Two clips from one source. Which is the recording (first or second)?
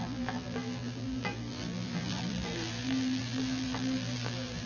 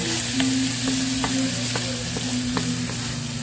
second